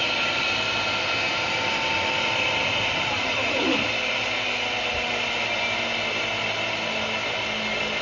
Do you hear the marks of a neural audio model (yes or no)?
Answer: no